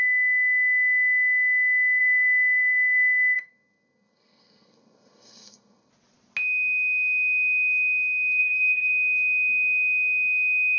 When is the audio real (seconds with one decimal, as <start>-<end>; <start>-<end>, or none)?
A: 0.0-2.0; 5.9-8.4; 8.9-10.8